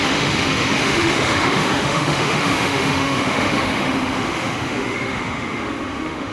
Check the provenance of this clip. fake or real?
fake